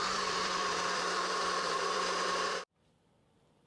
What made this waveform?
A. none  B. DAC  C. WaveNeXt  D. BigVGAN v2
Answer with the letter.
D